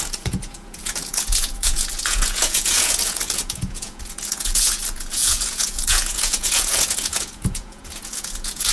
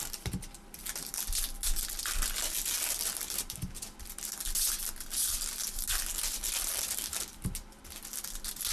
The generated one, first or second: first